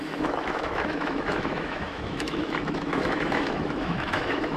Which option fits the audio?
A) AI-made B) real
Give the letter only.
A